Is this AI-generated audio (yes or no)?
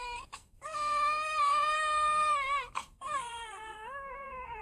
yes